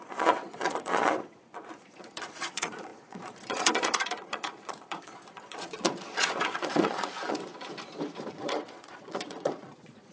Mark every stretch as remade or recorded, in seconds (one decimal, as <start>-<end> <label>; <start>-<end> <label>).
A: 0.0-7.5 remade; 7.5-8.3 recorded; 8.3-10.1 remade